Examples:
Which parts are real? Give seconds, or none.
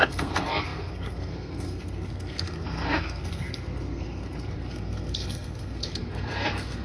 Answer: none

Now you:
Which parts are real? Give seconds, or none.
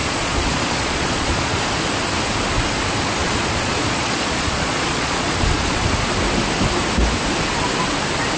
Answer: 1.6-3.2; 5.9-8.4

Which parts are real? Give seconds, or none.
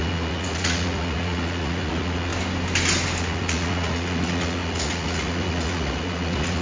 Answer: 2.3-3.2